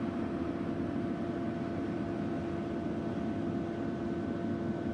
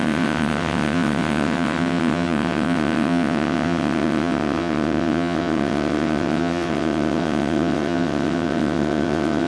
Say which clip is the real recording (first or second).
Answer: first